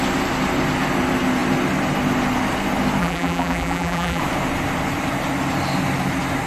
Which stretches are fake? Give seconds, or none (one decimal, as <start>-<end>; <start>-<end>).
3.0-4.2